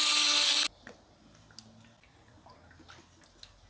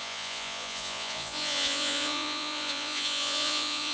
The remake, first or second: second